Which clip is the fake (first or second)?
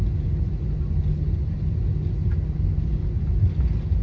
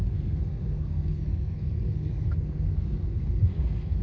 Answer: second